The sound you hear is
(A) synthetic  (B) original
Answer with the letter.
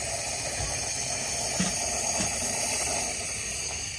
B